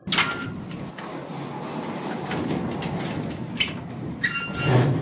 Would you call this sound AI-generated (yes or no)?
no